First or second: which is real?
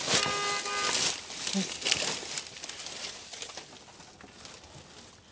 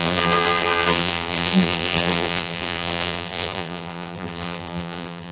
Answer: first